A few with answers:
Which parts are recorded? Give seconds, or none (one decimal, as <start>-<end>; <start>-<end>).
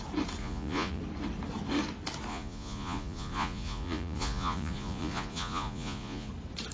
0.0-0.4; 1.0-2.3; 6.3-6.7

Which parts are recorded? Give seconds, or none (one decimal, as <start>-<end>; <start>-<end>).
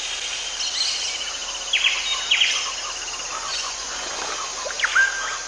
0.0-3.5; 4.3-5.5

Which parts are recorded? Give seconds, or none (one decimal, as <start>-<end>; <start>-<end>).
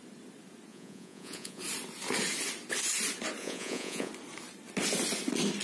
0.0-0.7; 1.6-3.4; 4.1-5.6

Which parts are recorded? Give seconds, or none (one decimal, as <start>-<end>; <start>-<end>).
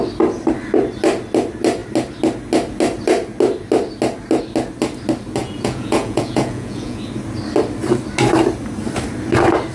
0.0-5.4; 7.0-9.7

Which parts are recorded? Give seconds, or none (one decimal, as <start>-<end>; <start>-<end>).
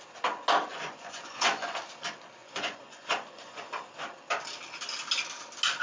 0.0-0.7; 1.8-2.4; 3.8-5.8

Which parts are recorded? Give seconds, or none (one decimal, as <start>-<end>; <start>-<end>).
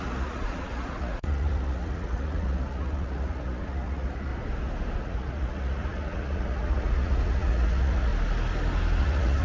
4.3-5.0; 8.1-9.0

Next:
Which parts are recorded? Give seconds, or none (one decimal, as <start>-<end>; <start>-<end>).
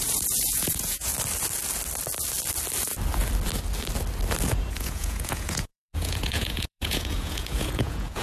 1.1-4.7